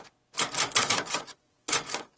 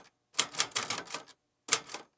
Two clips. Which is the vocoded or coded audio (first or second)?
first